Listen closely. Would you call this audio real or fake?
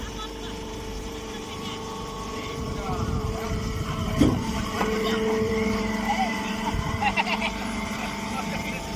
fake